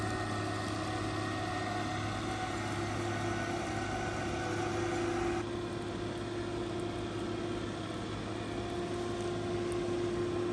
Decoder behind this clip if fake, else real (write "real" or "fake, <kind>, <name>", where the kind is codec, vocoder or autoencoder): real